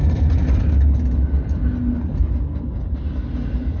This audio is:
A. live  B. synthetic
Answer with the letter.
A